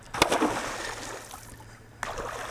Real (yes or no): yes